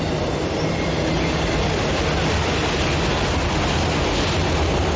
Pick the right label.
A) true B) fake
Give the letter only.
A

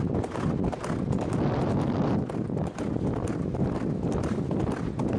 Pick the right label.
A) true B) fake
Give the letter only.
A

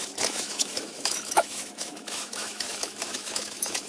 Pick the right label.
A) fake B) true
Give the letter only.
A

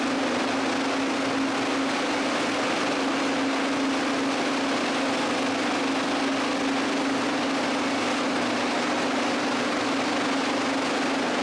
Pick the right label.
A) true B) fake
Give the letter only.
A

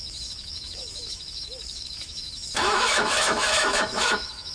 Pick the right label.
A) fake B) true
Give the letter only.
A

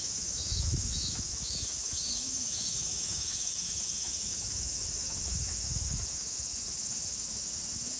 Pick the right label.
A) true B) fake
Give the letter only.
B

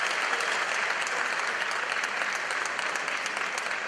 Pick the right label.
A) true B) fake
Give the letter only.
A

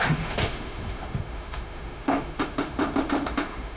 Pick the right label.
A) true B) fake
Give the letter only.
B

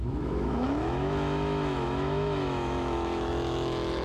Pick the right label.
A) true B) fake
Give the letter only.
B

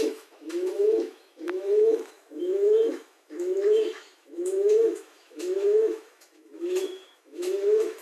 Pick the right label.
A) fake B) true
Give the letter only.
A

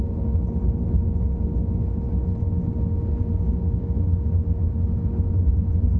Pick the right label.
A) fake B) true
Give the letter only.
B